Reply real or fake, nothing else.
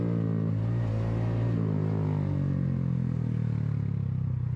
real